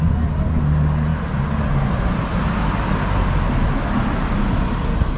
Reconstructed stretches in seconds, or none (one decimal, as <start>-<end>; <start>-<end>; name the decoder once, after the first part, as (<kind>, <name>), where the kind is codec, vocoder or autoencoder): none